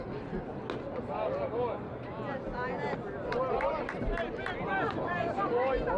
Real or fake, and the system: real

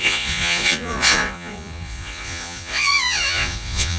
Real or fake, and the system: fake, vocoder, Vocos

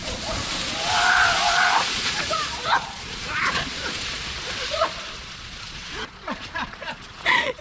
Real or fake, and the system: fake, vocoder, Vocos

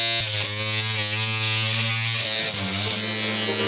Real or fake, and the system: real